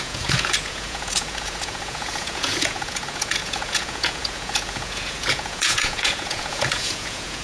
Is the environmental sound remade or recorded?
remade